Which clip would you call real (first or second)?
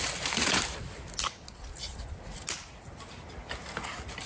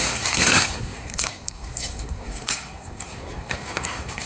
first